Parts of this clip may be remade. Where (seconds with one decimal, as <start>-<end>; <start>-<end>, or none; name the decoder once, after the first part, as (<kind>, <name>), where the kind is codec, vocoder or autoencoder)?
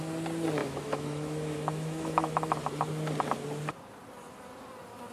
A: 0.6-2.6 (autoencoder, DAC-VAE)